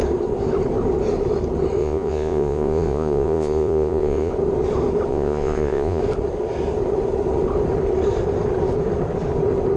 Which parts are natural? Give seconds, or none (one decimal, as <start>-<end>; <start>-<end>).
0.0-1.8; 4.3-5.1; 6.0-9.8